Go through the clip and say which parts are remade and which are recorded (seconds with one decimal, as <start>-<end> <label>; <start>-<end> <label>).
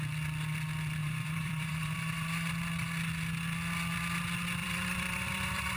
0.0-1.0 recorded; 1.0-2.5 remade; 2.5-4.6 recorded; 4.6-5.8 remade